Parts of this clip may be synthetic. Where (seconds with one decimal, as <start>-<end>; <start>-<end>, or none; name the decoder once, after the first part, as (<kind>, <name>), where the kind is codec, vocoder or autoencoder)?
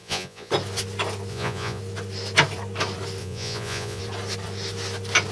0.0-0.5 (vocoder, Vocos); 1.3-1.8; 3.2-4.0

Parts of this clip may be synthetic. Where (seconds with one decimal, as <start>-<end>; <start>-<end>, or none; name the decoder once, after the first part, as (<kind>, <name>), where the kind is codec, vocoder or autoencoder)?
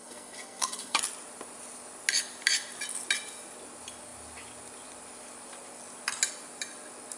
0.0-1.0 (codec, SNAC)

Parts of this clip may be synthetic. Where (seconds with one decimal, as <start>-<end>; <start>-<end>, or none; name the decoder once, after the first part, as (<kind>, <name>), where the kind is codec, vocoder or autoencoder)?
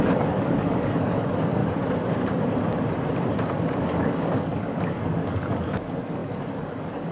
0.0-1.6 (codec, DAC); 3.6-7.1